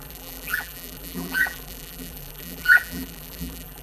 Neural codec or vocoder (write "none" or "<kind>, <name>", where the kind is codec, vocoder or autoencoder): vocoder, BigVGAN v2